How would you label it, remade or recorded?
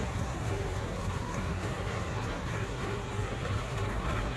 remade